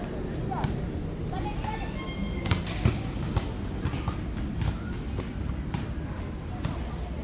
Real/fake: real